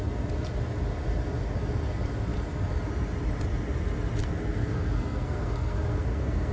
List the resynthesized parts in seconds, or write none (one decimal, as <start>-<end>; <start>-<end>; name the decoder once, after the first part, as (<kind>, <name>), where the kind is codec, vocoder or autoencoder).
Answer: 4.2-6.5 (codec, SNAC)